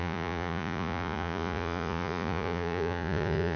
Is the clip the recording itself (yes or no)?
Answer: no